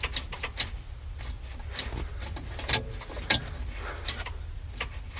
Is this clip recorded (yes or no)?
yes